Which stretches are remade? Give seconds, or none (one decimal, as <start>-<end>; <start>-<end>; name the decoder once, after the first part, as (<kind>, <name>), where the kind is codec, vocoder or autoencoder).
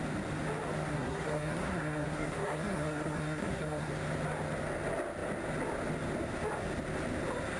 0.9-3.9 (codec, SNAC)